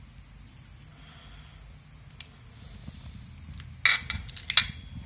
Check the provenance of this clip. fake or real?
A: real